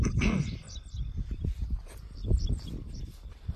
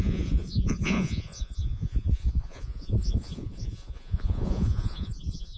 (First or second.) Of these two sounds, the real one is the first